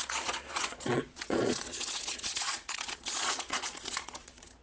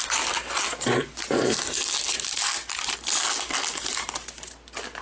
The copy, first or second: first